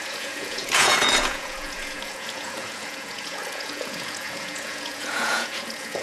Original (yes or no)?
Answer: no